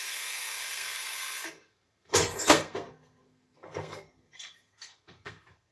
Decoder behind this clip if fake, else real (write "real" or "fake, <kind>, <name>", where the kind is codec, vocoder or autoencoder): fake, codec, SNAC